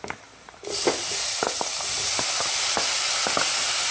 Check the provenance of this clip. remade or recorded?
remade